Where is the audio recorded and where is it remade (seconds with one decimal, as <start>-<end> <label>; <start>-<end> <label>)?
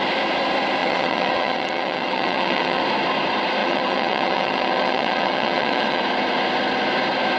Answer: 0.0-0.8 recorded; 0.8-2.8 remade; 2.8-3.6 recorded; 3.6-6.0 remade; 6.0-7.4 recorded